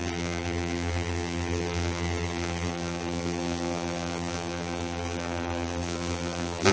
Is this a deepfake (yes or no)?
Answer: yes